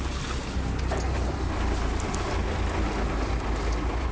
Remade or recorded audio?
recorded